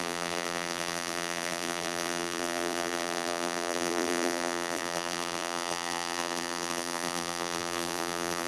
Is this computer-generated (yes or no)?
yes